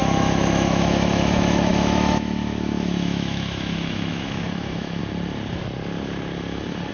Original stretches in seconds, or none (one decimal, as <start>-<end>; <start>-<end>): 5.0-6.9